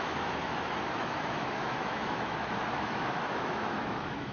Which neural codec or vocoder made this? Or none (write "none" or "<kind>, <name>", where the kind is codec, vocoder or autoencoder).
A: autoencoder, DAC-VAE